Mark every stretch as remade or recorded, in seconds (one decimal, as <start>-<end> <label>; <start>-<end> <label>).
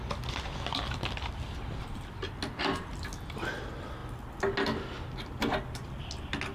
0.0-6.5 recorded